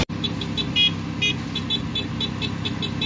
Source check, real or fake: real